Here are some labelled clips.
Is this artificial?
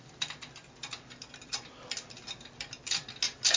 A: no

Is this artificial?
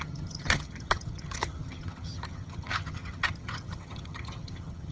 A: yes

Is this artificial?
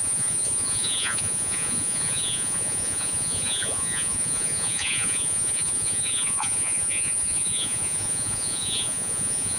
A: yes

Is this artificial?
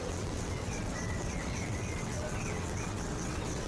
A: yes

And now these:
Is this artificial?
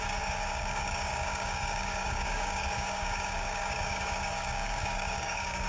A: yes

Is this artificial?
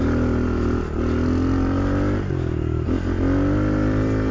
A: no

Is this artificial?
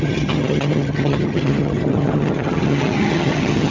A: yes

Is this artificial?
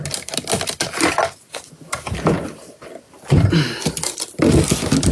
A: no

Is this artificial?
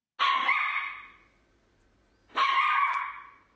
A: no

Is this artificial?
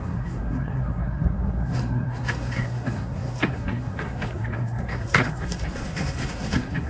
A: yes